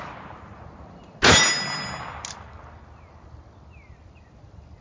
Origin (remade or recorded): recorded